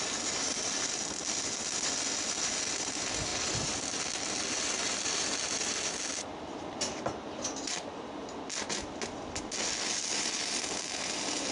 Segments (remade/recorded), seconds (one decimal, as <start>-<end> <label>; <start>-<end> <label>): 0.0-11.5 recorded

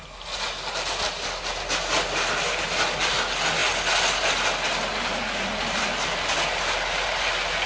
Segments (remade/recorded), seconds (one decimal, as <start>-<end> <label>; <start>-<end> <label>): 0.0-7.7 recorded

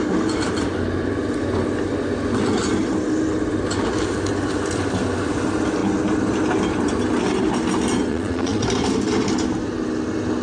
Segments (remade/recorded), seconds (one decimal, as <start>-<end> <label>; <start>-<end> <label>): 0.0-8.1 recorded; 8.1-8.6 remade; 8.6-10.4 recorded

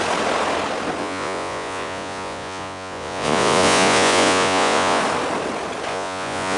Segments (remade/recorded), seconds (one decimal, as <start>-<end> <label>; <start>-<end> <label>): 0.0-1.0 recorded; 1.0-5.0 remade; 5.0-5.9 recorded; 5.9-6.6 remade

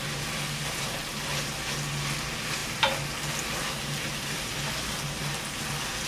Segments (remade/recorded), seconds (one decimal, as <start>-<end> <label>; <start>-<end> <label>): 0.0-6.1 recorded